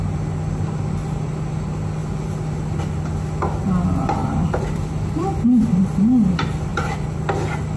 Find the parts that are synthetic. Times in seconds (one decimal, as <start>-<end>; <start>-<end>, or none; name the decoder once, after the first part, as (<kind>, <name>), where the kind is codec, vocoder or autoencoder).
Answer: 4.2-5.8 (vocoder, BigVGAN v2); 6.7-7.2